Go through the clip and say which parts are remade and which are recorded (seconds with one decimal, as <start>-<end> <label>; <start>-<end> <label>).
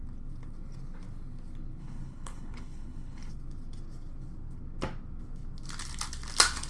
0.0-1.8 recorded; 1.8-3.3 remade; 3.3-6.7 recorded